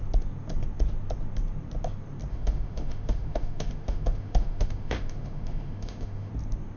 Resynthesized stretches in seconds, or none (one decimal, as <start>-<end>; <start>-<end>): 2.3-6.3